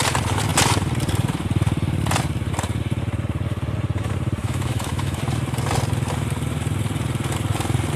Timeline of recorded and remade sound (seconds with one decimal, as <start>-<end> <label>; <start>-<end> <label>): 0.0-4.4 recorded; 4.4-5.2 remade; 5.2-8.0 recorded